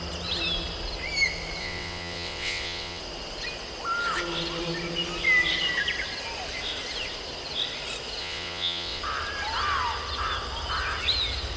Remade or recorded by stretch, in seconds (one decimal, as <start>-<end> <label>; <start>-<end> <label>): 0.0-1.6 recorded; 1.6-3.0 remade; 3.0-8.2 recorded; 8.2-9.0 remade; 9.0-11.6 recorded